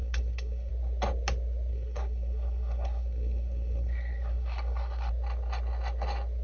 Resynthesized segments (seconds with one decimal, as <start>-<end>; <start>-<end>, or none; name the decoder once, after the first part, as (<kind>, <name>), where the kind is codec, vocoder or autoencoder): 0.0-0.7 (codec, SNAC); 1.7-5.1

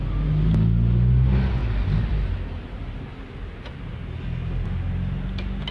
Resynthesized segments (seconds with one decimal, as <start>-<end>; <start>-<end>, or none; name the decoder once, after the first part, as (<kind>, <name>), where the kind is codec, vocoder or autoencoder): none

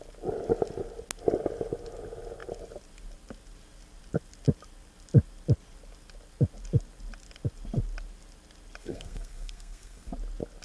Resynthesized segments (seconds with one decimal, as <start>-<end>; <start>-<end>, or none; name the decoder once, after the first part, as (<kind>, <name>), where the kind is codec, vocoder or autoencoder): 8.8-10.1 (codec, SNAC)

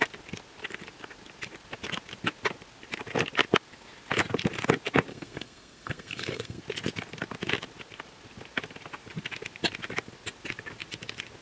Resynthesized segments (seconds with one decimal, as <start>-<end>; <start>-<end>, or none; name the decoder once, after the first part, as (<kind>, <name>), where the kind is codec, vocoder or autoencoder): 5.1-6.6 (codec, SNAC)

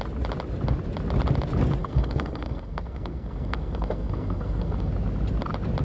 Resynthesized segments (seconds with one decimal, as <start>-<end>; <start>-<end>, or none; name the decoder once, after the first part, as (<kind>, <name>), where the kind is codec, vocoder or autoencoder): 1.8-4.9 (codec, SNAC)

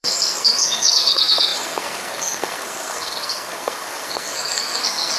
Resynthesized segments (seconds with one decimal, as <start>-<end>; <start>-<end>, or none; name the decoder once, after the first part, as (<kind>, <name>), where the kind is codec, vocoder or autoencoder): 0.0-5.2 (codec, SNAC)